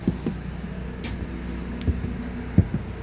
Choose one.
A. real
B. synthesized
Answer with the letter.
A